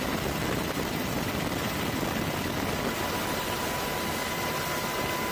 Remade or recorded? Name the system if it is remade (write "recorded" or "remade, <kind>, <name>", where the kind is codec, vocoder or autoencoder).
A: recorded